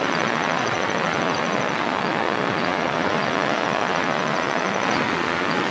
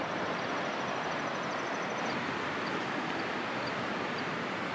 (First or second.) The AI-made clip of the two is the first